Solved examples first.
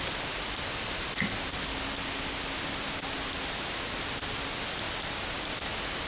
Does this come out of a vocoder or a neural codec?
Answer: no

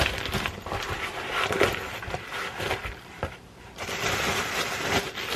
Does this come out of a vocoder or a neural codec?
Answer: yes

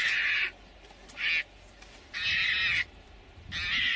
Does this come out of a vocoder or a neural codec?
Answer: no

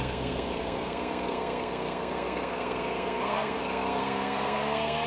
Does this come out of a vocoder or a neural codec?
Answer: yes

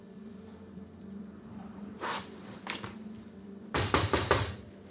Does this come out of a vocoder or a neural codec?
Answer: yes